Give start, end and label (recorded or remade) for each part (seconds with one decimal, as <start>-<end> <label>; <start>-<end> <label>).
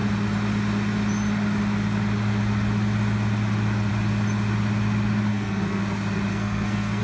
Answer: 0.0-5.3 recorded; 5.3-5.8 remade; 5.8-6.3 recorded; 6.3-7.0 remade